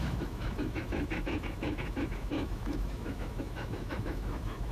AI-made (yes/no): yes